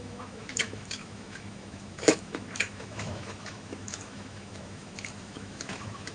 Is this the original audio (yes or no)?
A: no